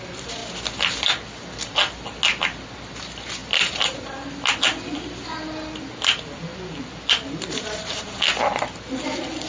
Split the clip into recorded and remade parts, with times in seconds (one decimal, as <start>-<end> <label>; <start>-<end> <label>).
0.0-3.4 recorded; 3.4-4.1 remade; 4.1-6.5 recorded; 6.5-8.2 remade; 8.2-9.5 recorded